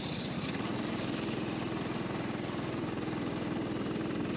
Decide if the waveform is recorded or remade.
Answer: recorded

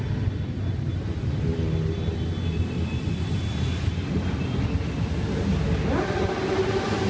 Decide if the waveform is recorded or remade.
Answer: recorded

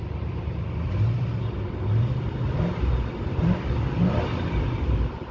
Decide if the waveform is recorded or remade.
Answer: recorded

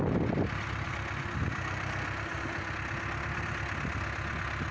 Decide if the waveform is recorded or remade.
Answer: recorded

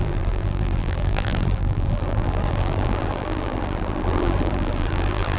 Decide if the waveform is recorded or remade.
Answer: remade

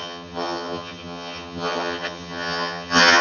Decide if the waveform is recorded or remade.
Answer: remade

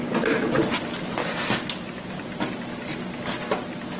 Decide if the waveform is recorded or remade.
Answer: recorded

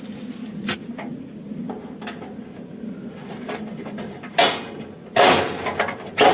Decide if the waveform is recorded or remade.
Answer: recorded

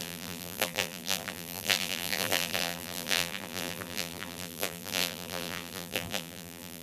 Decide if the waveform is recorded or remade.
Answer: remade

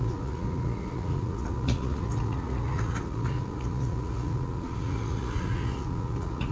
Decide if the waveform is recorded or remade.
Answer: remade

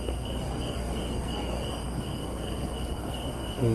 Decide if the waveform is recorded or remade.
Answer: remade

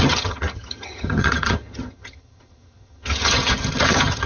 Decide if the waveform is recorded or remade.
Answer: remade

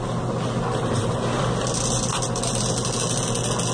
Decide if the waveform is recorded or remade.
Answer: recorded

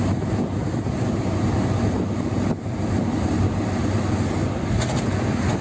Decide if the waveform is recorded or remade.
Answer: recorded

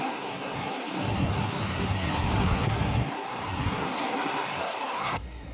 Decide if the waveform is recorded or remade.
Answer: remade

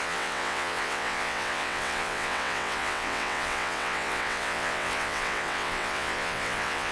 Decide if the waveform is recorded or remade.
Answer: remade